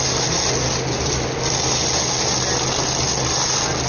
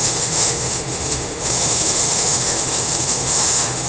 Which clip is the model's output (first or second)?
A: second